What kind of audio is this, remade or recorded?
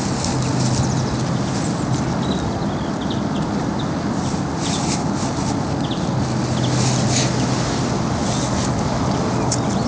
recorded